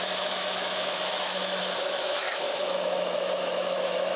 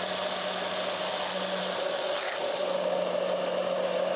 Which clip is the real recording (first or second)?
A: second